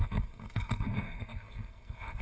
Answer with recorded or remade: remade